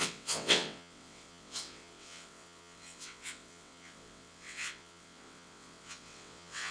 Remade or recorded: remade